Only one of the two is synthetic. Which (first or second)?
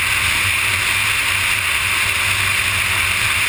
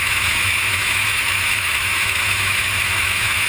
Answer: second